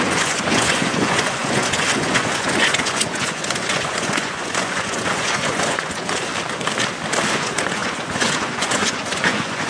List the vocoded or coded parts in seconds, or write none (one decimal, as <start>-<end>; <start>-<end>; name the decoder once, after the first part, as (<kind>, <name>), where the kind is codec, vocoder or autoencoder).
0.0-6.3 (vocoder, Vocos); 7.3-9.7